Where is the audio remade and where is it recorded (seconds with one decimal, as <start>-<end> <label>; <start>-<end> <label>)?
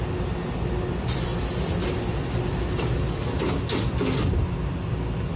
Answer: 0.0-5.4 recorded